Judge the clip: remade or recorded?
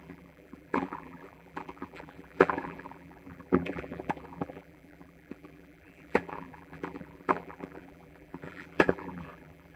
remade